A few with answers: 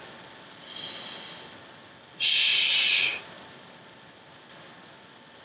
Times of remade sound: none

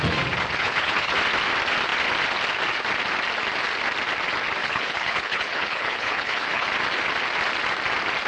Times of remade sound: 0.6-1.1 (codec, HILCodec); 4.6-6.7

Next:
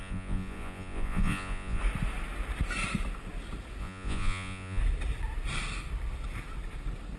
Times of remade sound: 0.0-1.8 (vocoder, Vocos); 3.8-4.8

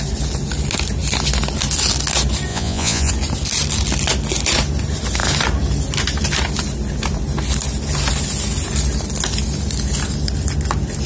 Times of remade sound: 2.5-3.1 (vocoder, Vocos)

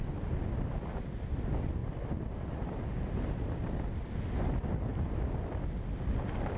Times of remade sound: none